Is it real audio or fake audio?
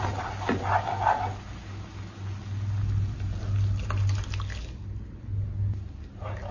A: real